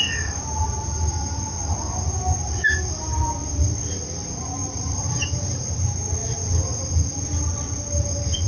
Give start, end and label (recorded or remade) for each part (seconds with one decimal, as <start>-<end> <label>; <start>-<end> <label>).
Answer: 0.0-2.4 recorded; 2.4-5.4 remade; 5.4-8.5 recorded